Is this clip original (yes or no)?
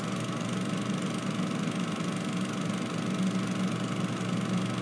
yes